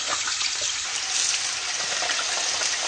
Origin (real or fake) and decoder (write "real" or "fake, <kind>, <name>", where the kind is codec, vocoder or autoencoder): real